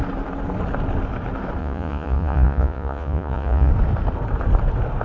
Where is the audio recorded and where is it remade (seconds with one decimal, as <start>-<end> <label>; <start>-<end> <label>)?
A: 0.0-1.6 recorded; 1.6-3.7 remade; 3.7-5.0 recorded